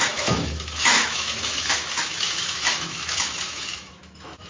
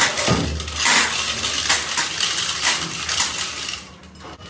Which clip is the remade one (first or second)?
first